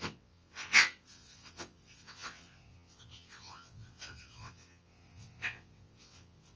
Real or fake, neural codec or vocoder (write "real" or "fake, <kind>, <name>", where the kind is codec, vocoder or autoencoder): fake, vocoder, WaveNeXt